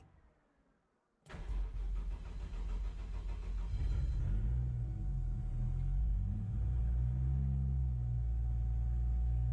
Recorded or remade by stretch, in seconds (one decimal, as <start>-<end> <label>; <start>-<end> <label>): 0.0-6.0 recorded; 6.0-6.8 remade; 6.8-9.5 recorded